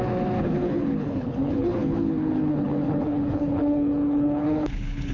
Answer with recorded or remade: remade